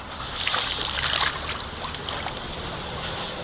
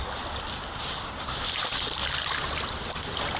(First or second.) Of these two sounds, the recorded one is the first